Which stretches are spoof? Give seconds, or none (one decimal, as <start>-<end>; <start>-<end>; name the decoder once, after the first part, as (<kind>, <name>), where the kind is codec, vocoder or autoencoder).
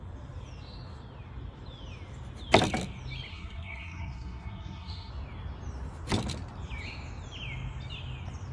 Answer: 3.3-5.1 (codec, SNAC)